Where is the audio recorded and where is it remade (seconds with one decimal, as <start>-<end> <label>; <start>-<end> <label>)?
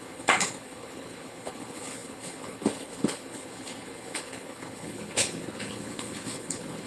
0.0-6.9 remade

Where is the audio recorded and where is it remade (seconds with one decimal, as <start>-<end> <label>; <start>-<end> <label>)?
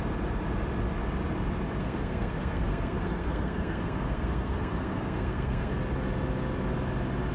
0.0-1.8 recorded; 1.8-5.7 remade; 5.7-7.3 recorded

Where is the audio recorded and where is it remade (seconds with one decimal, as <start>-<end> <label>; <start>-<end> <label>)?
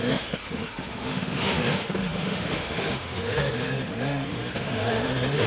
0.0-5.5 remade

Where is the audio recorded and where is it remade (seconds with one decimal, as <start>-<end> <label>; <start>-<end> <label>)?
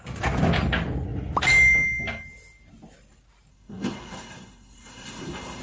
0.0-3.5 recorded; 3.5-5.6 remade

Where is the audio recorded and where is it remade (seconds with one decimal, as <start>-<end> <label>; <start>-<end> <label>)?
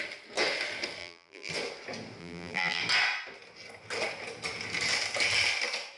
0.0-1.0 recorded; 1.0-1.5 remade; 1.5-2.2 recorded; 2.2-2.8 remade; 2.8-6.0 recorded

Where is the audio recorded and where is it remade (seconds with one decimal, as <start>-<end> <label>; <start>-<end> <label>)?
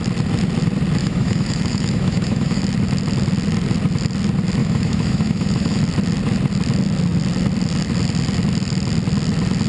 0.0-1.0 recorded; 1.0-2.6 remade; 2.6-4.6 recorded; 4.6-5.8 remade; 5.8-9.7 recorded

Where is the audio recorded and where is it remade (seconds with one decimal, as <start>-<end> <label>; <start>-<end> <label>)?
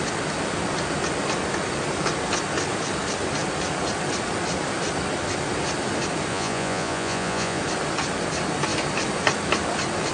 0.0-6.3 recorded; 6.3-7.6 remade; 7.6-10.1 recorded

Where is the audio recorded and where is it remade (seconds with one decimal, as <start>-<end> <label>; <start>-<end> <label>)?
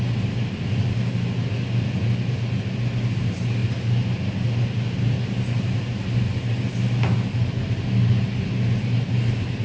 0.0-9.6 recorded